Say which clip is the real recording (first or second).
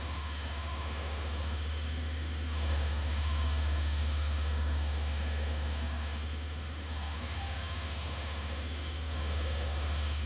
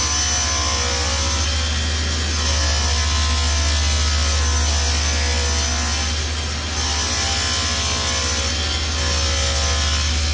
second